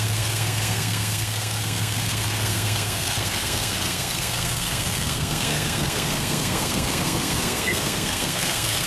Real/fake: fake